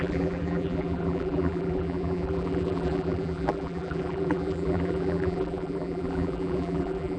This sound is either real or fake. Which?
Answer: fake